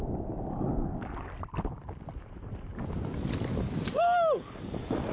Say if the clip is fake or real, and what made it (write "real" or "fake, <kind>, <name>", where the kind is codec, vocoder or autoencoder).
real